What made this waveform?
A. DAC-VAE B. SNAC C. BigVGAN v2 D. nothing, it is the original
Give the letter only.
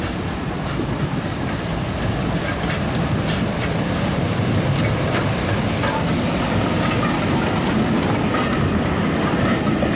D